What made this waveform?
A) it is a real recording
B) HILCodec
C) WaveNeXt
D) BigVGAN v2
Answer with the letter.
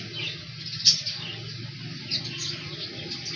A